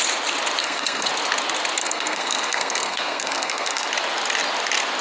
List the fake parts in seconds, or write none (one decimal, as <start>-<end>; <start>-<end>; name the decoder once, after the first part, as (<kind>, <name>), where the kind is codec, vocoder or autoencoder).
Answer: 0.6-1.1 (codec, SNAC); 1.8-3.9